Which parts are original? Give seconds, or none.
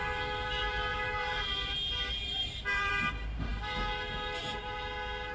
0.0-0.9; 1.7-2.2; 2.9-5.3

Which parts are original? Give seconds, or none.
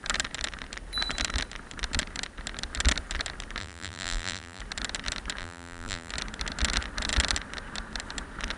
0.0-3.6; 4.6-5.4; 6.1-8.6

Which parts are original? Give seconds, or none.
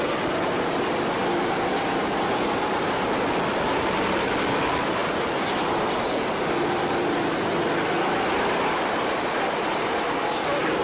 0.0-10.8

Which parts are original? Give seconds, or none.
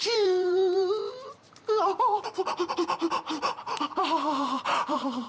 none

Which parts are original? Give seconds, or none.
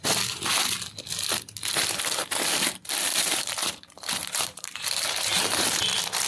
0.0-3.1; 5.8-6.3